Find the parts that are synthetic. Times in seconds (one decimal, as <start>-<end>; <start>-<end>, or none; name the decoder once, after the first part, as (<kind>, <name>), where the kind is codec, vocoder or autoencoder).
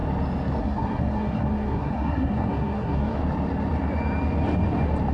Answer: 0.6-3.2 (codec, SNAC)